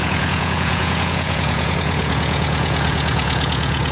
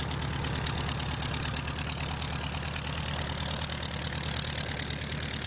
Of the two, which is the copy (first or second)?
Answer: first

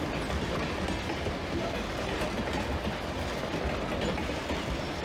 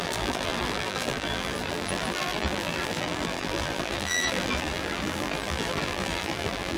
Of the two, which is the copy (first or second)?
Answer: second